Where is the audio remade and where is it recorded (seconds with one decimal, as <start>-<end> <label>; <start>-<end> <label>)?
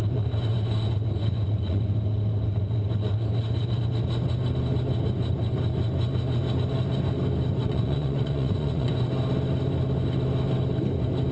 0.0-1.2 recorded; 1.2-1.9 remade; 1.9-7.6 recorded; 7.6-9.1 remade; 9.1-11.3 recorded